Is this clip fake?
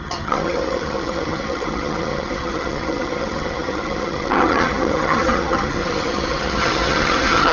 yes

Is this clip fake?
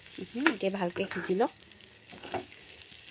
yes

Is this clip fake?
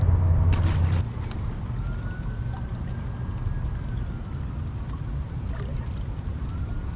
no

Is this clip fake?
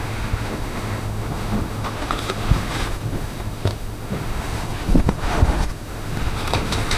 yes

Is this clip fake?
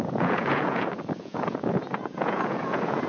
yes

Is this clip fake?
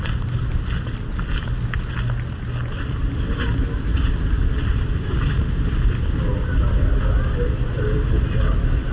no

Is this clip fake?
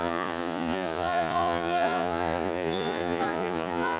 yes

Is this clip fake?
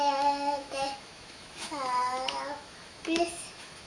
yes